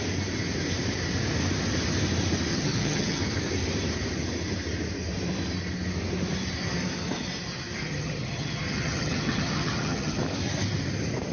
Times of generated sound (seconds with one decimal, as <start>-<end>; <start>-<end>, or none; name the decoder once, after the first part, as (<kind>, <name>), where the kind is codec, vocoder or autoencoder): 2.5-3.2 (vocoder, HiFi-GAN); 7.8-10.2